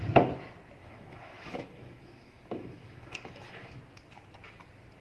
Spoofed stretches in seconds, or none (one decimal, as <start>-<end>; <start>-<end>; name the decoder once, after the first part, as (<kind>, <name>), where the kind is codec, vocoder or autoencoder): 0.8-3.8 (autoencoder, DAC-VAE)

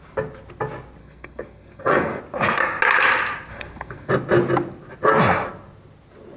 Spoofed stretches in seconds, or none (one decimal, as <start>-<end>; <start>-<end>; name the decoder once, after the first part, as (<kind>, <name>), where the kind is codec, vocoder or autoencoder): 1.0-2.2 (codec, SNAC); 3.5-4.1

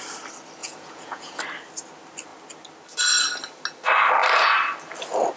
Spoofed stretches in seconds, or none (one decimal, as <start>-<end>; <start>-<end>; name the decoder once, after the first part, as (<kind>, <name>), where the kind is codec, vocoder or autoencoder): 0.6-1.4 (vocoder, Vocos)

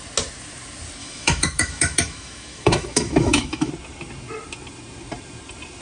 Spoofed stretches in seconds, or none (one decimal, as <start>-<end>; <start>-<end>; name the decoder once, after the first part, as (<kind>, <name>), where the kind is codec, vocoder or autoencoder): 1.0-3.7 (autoencoder, DAC-VAE)

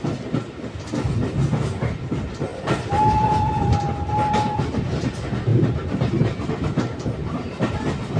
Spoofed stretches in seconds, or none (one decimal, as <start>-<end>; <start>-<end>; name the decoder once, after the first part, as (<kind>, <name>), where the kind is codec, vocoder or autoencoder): 2.5-4.3 (vocoder, BigVGAN v2); 5.5-7.6